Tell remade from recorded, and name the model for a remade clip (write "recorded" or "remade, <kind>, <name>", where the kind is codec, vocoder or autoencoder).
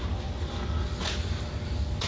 recorded